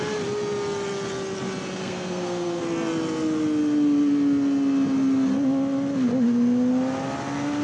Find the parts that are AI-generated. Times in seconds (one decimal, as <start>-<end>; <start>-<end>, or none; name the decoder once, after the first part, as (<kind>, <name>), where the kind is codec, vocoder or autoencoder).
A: 1.8-2.6 (codec, SNAC)